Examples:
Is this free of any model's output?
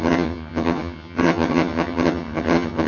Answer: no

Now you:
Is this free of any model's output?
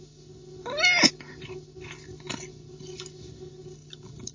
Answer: yes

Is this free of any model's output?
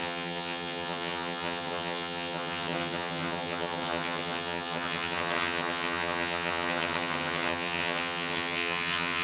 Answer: no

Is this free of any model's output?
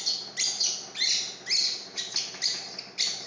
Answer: yes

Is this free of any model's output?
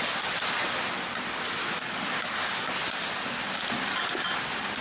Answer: yes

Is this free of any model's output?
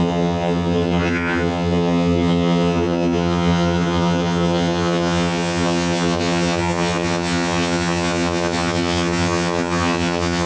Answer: no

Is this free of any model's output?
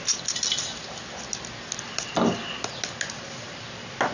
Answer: yes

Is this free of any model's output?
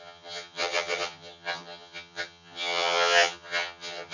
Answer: no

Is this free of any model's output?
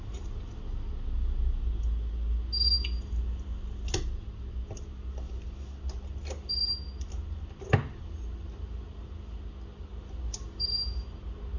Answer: yes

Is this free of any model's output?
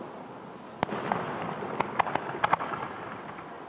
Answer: yes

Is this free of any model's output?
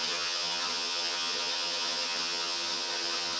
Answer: no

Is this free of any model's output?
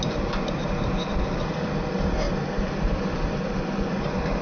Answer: yes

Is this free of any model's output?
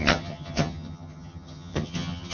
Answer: no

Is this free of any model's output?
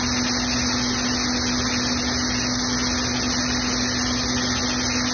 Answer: yes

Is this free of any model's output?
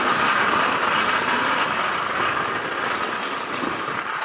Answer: yes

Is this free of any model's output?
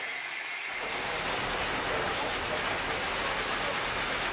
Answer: yes